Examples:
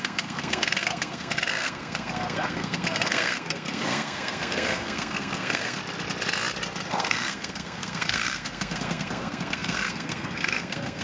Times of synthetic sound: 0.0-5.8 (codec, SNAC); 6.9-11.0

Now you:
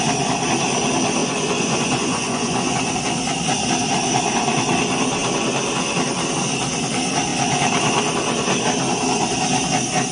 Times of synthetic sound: 1.2-2.9 (vocoder, Vocos)

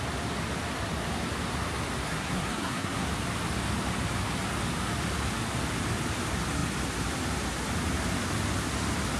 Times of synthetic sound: 2.0-3.1 (codec, SNAC)

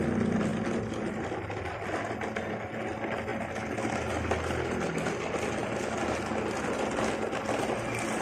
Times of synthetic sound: 0.5-1.0 (vocoder, BigVGAN v2)

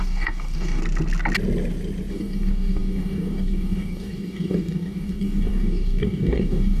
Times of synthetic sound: 0.0-0.8 (codec, DAC); 2.1-6.8

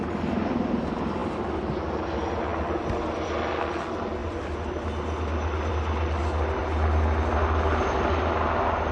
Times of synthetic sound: none

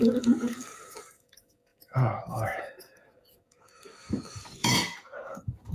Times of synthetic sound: 0.0-5.7 (codec, DAC)

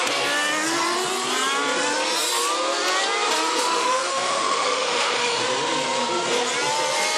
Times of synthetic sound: 3.5-5.4 (autoencoder, DAC-VAE)